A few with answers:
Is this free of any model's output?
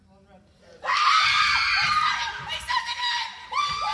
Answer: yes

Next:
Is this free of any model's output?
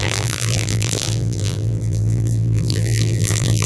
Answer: no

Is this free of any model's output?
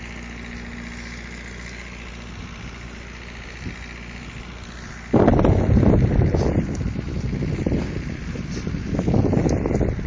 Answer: yes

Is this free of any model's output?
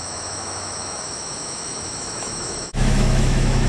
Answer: no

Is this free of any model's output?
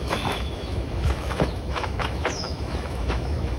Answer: no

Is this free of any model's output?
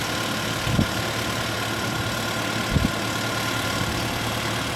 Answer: yes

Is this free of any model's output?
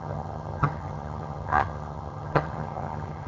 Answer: no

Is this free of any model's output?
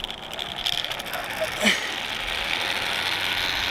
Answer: yes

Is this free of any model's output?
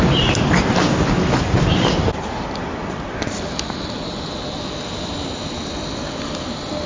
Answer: yes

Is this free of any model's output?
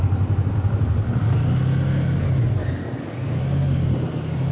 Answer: yes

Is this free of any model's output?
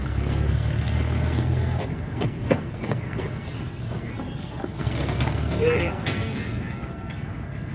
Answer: no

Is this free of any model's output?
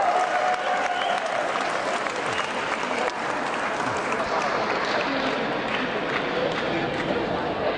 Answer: yes